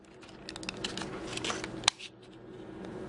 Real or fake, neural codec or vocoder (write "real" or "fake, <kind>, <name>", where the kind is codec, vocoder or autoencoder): real